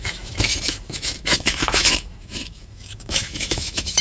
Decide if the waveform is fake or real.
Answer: fake